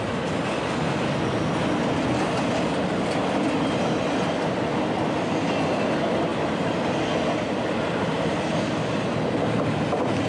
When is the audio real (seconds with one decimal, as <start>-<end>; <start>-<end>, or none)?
0.0-10.3